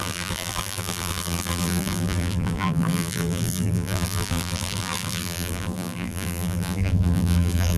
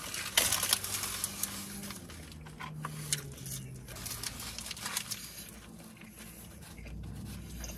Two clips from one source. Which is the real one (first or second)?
second